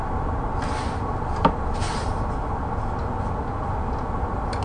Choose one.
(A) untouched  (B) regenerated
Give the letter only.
A